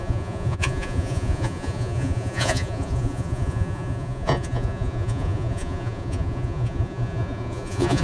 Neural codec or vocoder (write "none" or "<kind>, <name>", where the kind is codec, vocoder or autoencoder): vocoder, Vocos